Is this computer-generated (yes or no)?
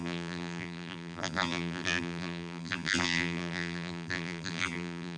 yes